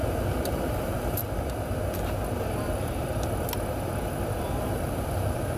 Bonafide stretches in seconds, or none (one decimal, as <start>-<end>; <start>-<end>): 0.0-0.7; 1.2-4.6